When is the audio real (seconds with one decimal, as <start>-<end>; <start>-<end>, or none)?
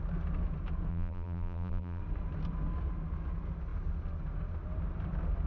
0.0-0.9; 2.0-5.5